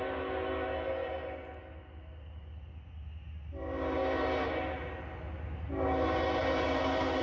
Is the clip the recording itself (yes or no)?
yes